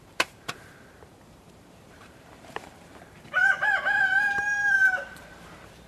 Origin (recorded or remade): remade